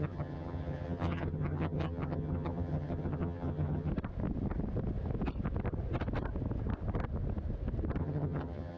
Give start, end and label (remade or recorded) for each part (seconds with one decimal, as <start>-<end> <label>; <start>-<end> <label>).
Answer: 0.0-3.9 remade; 3.9-8.0 recorded; 8.0-8.8 remade